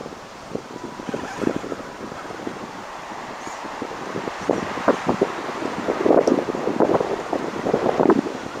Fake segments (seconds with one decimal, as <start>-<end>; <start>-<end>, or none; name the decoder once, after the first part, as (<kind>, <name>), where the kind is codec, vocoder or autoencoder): 0.0-4.8 (vocoder, BigVGAN v2); 6.3-8.6